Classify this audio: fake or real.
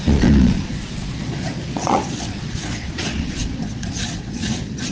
fake